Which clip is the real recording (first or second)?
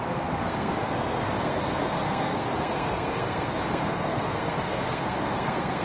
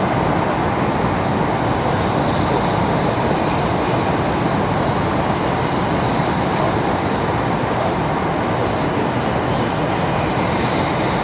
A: second